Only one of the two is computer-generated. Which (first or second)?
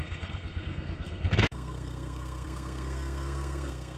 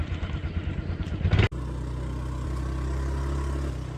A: first